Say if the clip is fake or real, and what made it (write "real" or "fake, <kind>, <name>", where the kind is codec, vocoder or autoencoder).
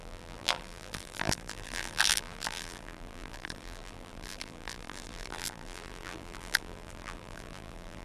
fake, vocoder, BigVGAN v2